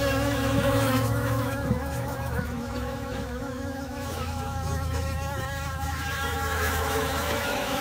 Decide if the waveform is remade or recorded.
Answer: remade